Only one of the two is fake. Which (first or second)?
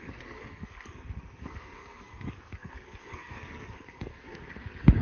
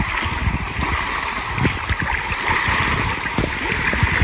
first